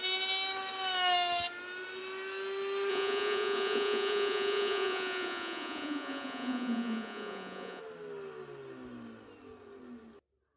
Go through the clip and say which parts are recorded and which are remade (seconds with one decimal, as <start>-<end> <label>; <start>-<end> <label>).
0.0-2.9 recorded; 2.9-7.8 remade; 7.8-10.6 recorded